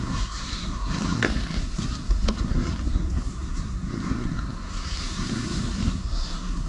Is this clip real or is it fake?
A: fake